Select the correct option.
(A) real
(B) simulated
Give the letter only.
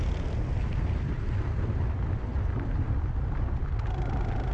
A